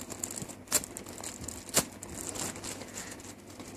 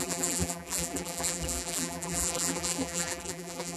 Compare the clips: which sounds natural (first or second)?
first